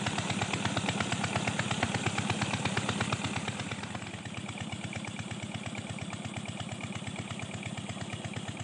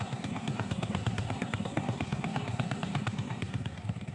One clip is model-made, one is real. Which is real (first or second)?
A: first